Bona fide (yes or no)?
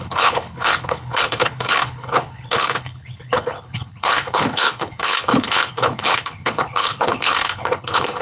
no